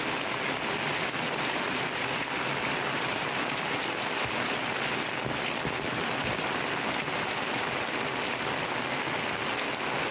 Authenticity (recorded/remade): recorded